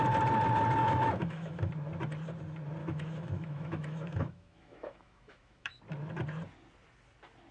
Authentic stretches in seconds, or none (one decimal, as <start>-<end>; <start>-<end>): 0.0-0.8; 1.7-2.8; 5.8-7.5